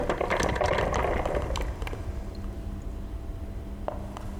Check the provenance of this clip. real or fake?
real